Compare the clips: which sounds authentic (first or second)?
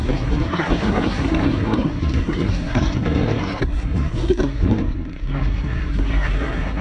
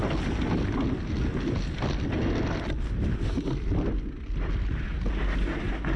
second